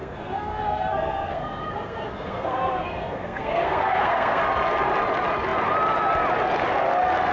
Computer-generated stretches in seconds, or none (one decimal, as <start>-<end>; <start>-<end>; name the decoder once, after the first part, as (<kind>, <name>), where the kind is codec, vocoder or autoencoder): 0.0-4.4 (codec, SNAC)